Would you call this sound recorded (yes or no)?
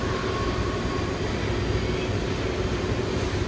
yes